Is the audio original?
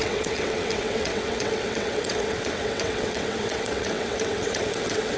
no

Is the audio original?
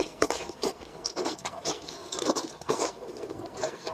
no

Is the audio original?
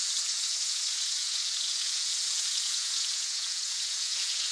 no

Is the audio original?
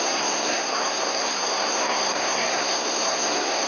no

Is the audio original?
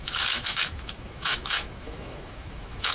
no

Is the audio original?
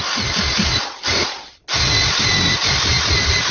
yes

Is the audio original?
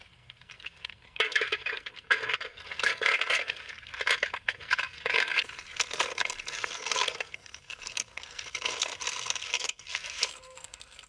no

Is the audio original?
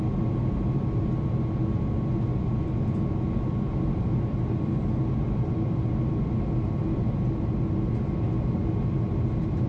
yes